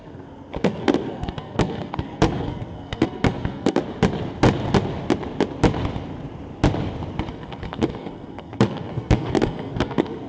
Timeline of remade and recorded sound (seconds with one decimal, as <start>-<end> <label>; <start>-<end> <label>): 0.0-3.8 remade; 3.8-7.3 recorded; 7.3-10.3 remade